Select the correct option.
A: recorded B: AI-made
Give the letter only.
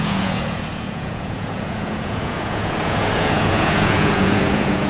B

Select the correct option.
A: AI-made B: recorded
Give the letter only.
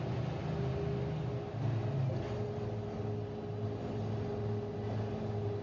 B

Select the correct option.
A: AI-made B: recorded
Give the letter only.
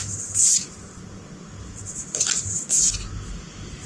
B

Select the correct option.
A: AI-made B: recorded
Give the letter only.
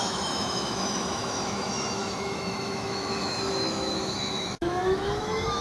A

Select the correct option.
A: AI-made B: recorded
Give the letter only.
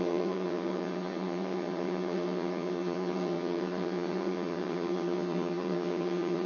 A